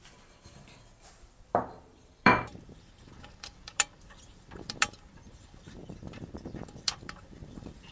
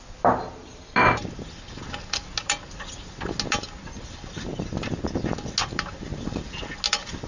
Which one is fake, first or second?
first